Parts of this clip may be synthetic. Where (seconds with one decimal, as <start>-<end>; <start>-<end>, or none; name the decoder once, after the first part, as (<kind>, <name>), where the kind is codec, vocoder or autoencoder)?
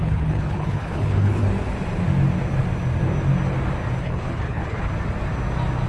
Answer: 0.0-1.4 (codec, HILCodec); 4.0-4.9